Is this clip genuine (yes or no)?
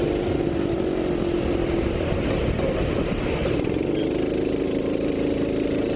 yes